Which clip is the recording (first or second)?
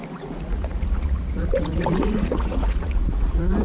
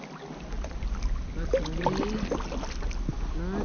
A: second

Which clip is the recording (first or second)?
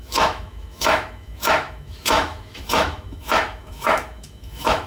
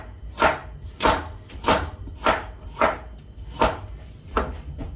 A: second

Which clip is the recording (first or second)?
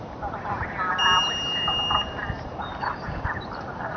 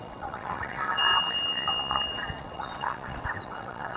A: first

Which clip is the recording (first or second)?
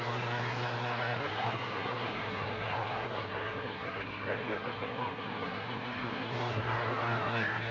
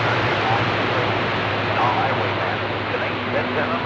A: second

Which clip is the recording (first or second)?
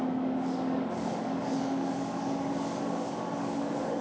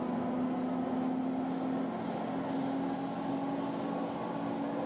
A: second